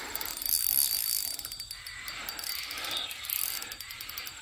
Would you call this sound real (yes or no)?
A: yes